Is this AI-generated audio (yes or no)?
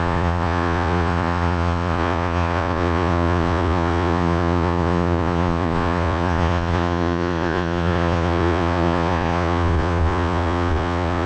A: yes